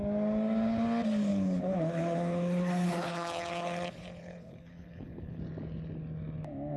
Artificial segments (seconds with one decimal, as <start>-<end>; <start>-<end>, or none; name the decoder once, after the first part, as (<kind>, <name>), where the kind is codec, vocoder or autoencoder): 1.3-5.4 (codec, HILCodec)